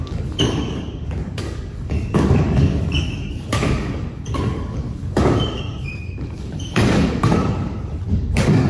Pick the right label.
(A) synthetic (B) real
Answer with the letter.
A